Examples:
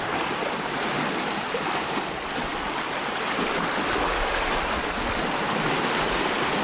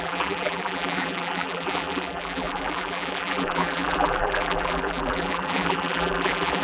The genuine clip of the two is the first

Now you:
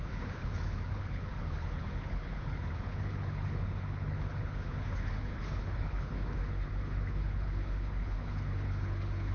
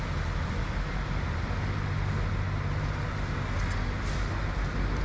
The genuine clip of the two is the second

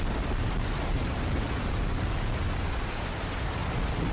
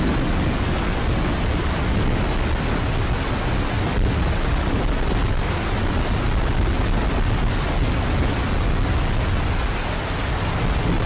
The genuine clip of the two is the second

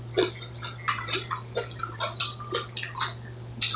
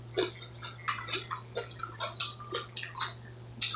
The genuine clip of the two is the second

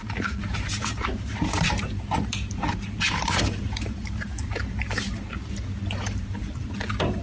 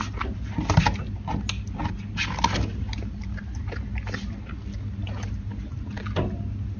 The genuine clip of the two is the second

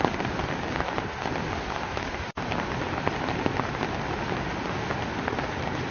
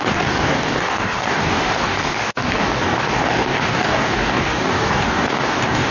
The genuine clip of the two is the first